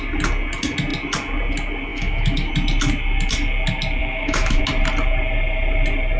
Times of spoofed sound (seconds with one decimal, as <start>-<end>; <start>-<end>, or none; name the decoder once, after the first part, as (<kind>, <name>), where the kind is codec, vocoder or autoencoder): 1.9-2.5 (autoencoder, DAC-VAE); 4.0-4.6